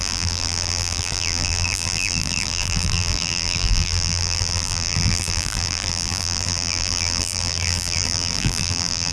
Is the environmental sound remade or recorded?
remade